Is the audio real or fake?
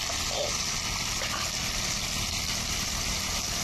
real